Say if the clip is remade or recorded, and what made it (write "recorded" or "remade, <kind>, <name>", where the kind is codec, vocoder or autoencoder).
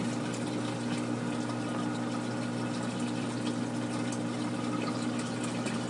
recorded